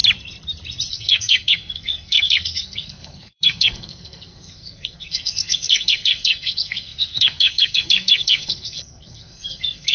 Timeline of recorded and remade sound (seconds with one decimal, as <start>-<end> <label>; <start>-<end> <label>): 0.0-0.9 recorded; 0.9-9.9 remade